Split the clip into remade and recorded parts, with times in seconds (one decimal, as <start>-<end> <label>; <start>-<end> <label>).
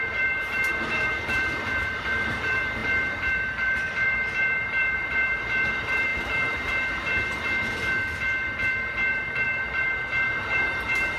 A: 0.0-11.2 remade